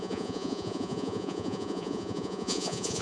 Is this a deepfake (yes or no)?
yes